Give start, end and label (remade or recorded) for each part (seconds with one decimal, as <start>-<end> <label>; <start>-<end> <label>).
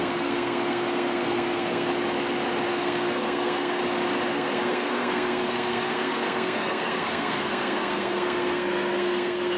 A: 0.0-1.9 remade; 1.9-2.7 recorded; 2.7-3.8 remade; 3.8-4.3 recorded; 4.3-9.6 remade